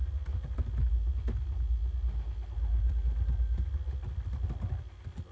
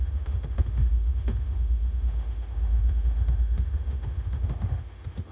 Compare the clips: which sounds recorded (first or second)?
first